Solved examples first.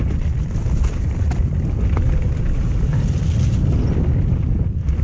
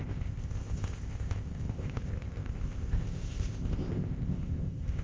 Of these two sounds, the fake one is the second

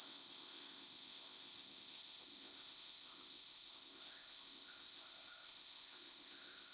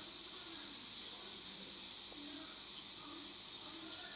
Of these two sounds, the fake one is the first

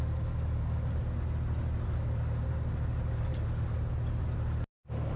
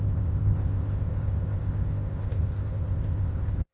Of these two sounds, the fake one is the second